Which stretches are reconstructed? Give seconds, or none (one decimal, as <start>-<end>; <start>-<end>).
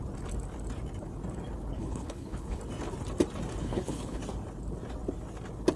1.7-2.6; 3.6-4.2